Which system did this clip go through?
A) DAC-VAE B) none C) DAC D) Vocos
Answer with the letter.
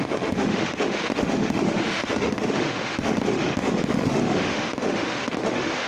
A